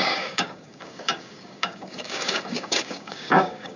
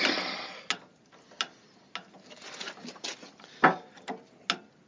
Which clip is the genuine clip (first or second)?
second